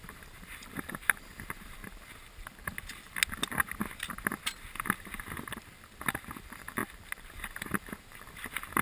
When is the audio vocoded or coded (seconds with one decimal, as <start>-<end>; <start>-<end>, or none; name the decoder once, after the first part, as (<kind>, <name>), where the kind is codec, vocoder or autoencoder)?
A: 0.0-1.8 (vocoder, BigVGAN v2); 6.0-6.8; 7.3-8.8